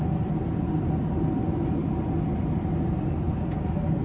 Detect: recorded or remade recorded